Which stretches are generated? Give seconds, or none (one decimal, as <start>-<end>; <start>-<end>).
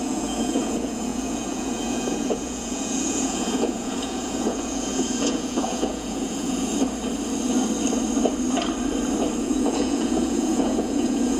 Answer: 0.0-6.7; 9.4-11.4